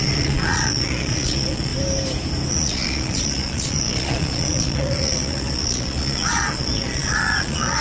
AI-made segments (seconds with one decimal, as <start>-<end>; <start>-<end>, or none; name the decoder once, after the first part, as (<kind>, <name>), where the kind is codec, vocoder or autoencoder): 0.0-1.7 (vocoder, Vocos); 2.5-7.8